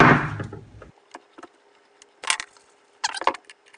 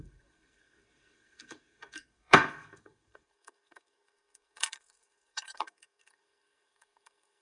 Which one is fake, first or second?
second